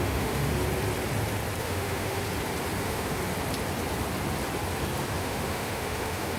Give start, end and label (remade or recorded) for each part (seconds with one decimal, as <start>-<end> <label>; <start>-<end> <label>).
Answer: 0.0-0.5 remade; 0.5-1.6 recorded; 1.6-2.2 remade; 2.2-2.8 recorded; 2.8-3.2 remade; 3.2-5.2 recorded; 5.2-6.4 remade